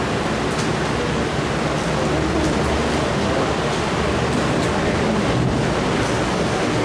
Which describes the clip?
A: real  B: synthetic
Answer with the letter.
A